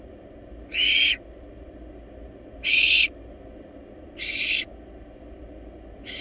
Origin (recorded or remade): recorded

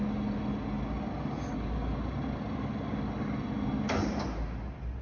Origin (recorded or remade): recorded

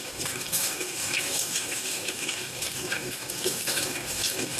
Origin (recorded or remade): remade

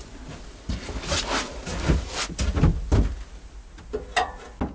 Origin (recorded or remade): recorded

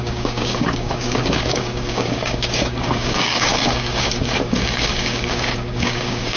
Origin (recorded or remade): remade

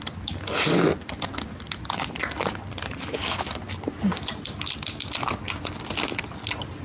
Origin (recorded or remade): recorded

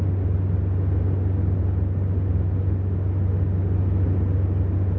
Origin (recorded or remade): recorded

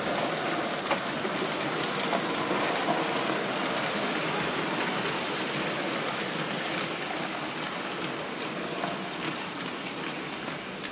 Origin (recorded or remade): recorded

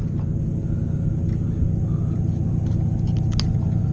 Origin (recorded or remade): recorded